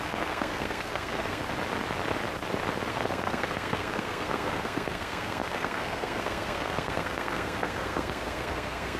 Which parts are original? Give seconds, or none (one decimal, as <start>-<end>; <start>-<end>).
1.4-2.9